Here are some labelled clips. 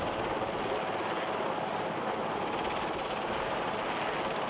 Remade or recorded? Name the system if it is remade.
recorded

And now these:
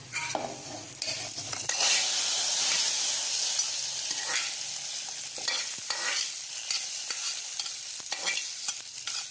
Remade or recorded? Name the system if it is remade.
recorded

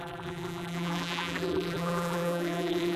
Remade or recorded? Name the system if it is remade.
remade, vocoder, BigVGAN v2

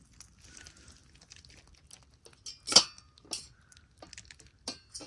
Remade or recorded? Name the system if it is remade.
recorded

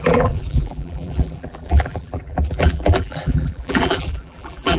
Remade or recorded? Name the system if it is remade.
remade, vocoder, BigVGAN v2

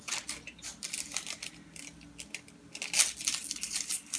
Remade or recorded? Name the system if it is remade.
recorded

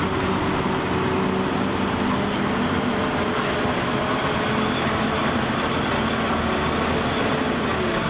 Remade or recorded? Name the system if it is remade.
recorded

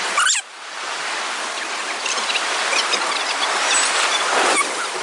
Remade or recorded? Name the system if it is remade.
remade, vocoder, BigVGAN v2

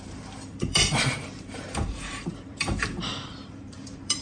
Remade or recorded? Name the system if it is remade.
remade, vocoder, BigVGAN v2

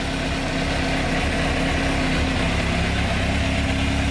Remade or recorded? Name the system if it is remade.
recorded